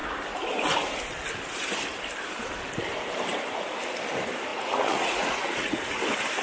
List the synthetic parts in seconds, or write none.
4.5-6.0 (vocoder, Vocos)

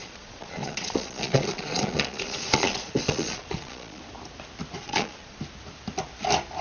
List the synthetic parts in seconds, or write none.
0.0-4.0 (vocoder, Vocos); 4.8-5.4